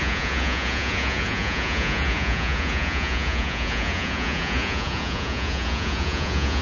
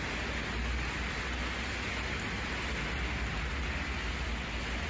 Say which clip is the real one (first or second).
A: second